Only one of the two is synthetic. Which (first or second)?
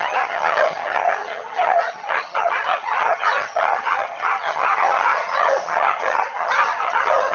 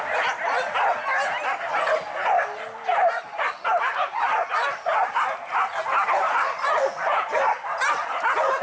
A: first